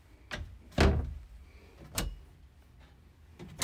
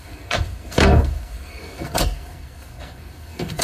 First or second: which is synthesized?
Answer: second